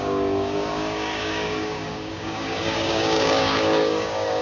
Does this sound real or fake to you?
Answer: fake